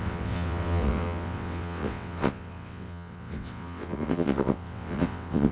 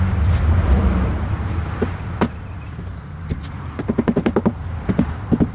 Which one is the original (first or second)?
second